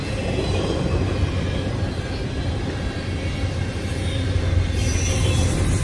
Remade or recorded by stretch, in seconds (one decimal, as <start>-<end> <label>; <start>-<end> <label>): 0.0-5.8 recorded